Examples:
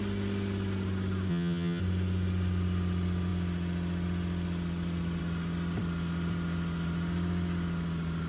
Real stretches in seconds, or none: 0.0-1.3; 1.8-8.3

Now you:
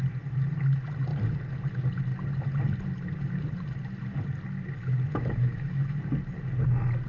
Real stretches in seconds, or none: 0.0-5.1; 6.1-7.1